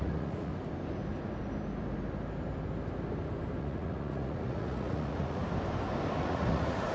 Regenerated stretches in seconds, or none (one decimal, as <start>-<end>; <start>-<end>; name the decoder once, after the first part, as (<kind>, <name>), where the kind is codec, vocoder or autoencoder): 0.0-0.5 (vocoder, Vocos); 3.6-5.4; 6.2-6.9